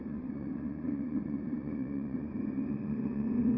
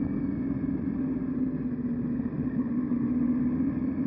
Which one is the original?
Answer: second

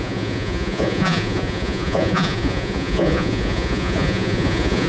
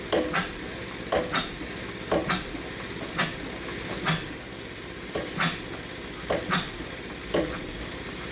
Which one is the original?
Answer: second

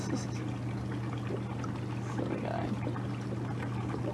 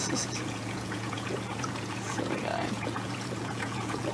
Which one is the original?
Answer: first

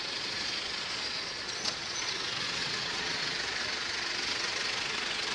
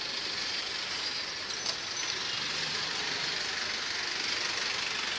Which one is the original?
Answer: second